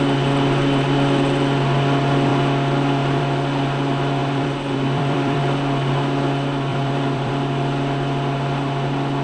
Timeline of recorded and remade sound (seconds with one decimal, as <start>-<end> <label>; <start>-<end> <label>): 0.0-4.2 recorded; 4.2-5.4 remade; 5.4-6.7 recorded; 6.7-7.3 remade; 7.3-9.2 recorded